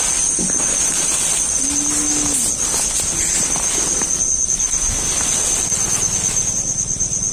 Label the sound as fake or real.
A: real